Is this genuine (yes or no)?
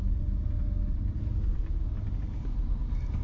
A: yes